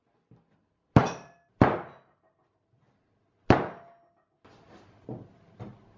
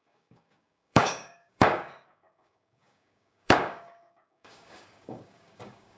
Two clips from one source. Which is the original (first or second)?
first